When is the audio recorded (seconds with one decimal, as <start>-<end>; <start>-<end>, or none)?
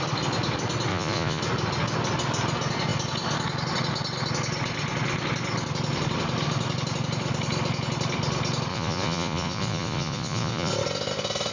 0.0-0.9; 1.4-8.7; 10.7-11.5